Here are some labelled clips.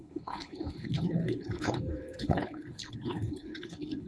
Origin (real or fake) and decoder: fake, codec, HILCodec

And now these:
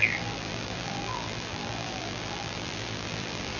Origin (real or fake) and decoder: fake, vocoder, BigVGAN v2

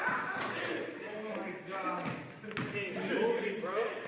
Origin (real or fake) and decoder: real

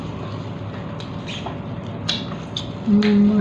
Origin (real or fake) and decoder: real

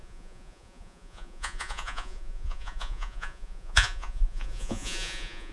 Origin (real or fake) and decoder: fake, vocoder, Vocos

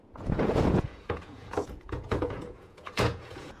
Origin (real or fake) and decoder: fake, vocoder, Vocos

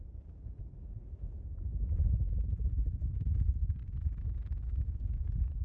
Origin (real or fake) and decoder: real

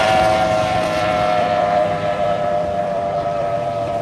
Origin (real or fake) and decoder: fake, vocoder, BigVGAN v2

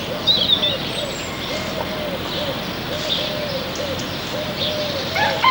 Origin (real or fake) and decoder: real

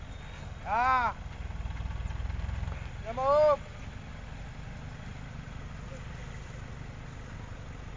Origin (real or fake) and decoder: real